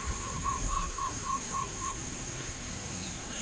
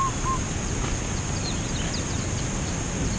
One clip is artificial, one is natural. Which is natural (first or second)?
second